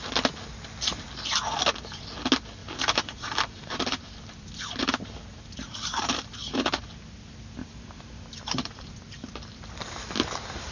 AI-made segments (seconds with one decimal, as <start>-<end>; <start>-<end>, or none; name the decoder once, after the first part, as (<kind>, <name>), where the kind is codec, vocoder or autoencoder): 2.6-6.8 (vocoder, BigVGAN v2); 7.6-9.3